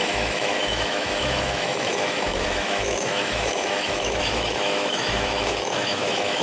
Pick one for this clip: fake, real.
fake